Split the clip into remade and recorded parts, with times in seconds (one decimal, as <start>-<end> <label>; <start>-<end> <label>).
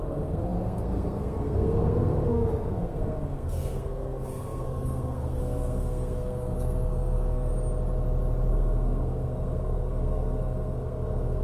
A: 0.0-7.5 remade; 7.5-8.5 recorded; 8.5-11.4 remade